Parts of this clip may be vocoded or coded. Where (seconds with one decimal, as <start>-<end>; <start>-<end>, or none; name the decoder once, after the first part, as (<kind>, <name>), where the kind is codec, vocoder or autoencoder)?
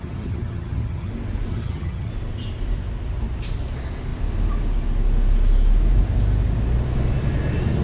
0.0-1.1 (vocoder, HiFi-GAN); 1.5-2.1